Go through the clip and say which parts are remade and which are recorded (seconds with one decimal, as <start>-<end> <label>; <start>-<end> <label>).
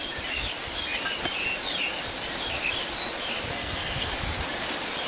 0.0-3.5 recorded; 3.5-4.1 remade; 4.1-5.1 recorded